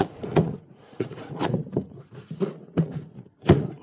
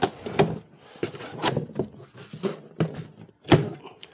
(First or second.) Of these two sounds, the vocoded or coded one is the first